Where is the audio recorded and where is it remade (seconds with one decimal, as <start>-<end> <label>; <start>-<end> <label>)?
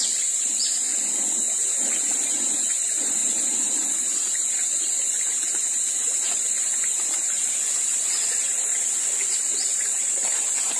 0.0-0.9 remade; 0.9-1.5 recorded; 1.5-8.7 remade; 8.7-9.7 recorded; 9.7-10.8 remade